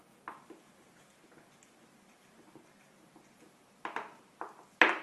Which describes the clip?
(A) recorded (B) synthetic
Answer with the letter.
A